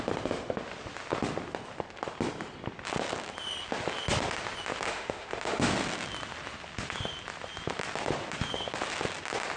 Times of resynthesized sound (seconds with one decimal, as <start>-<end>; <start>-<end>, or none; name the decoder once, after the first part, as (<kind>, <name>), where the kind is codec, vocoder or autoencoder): 4.7-5.7 (autoencoder, DAC-VAE)